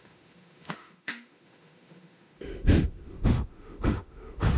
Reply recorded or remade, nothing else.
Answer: remade